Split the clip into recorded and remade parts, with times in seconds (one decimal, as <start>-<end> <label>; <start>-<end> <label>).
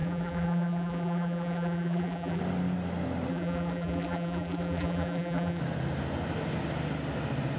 0.0-2.4 remade; 2.4-3.3 recorded; 3.3-5.6 remade; 5.6-7.6 recorded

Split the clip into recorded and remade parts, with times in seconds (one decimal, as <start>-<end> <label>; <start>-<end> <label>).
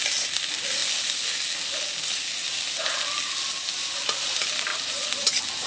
0.0-5.7 recorded